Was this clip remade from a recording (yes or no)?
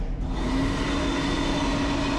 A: no